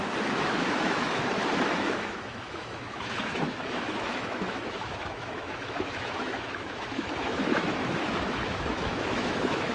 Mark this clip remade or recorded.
remade